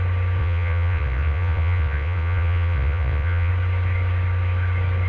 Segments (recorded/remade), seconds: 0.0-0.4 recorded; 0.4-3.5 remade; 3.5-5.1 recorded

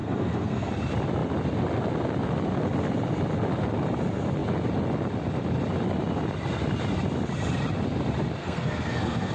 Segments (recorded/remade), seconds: 0.0-0.7 remade; 0.7-8.4 recorded; 8.4-9.3 remade

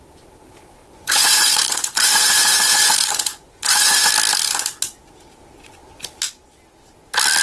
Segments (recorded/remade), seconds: 0.0-0.8 recorded; 0.8-4.1 remade; 4.1-7.4 recorded

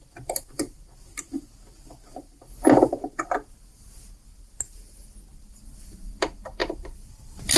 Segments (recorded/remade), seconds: 0.0-6.6 recorded; 6.6-7.6 remade

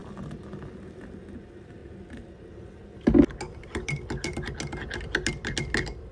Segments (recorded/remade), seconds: 0.0-6.1 recorded

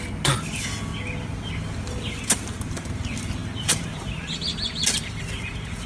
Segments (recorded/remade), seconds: 0.0-3.4 recorded; 3.4-4.0 remade; 4.0-5.9 recorded

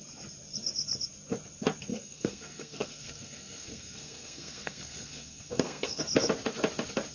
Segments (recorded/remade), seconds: 0.0-1.9 recorded; 1.9-6.0 remade; 6.0-7.1 recorded